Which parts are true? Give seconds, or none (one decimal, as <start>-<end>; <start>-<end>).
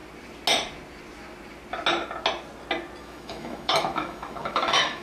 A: 0.0-3.0